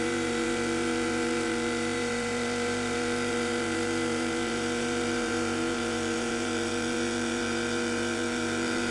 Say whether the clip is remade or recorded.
remade